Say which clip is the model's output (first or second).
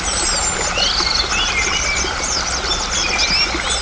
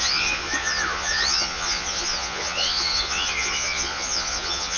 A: second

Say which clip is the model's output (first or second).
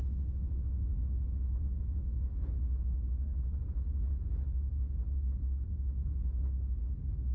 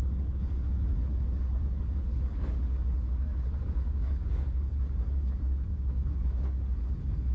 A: second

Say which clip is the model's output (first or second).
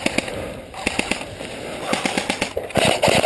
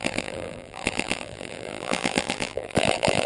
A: second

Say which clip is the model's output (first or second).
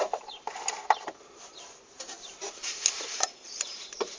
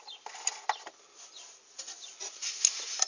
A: first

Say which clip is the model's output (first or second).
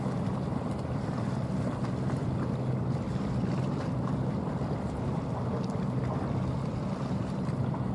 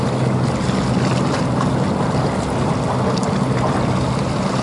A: first